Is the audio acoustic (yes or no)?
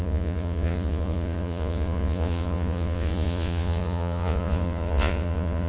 no